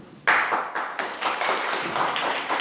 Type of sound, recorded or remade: recorded